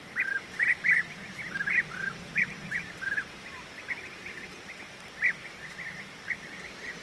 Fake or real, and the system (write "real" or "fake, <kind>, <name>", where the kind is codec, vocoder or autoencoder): real